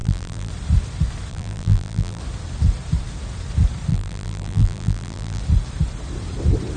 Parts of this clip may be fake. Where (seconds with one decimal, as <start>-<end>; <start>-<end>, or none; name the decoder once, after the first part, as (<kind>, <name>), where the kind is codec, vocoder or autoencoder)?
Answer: 0.0-0.5 (vocoder, BigVGAN v2); 1.3-2.2; 3.9-5.4